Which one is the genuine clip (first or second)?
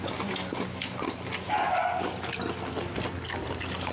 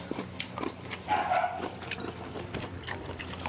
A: first